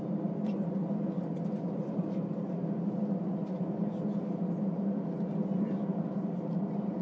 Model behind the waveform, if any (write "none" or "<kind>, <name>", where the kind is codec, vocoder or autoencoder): none